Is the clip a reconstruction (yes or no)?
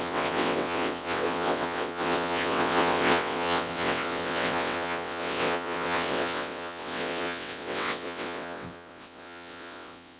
yes